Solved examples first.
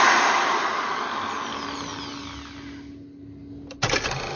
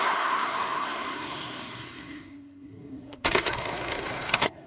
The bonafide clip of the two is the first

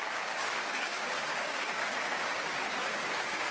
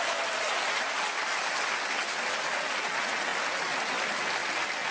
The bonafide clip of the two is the second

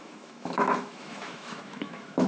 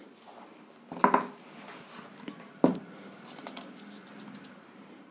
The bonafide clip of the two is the second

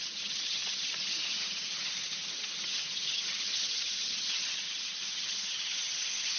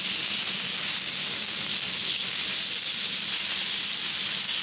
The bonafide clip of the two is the second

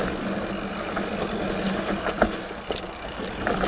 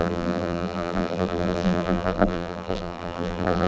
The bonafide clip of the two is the first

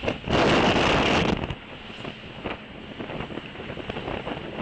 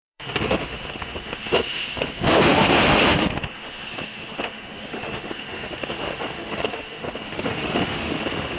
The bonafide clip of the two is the first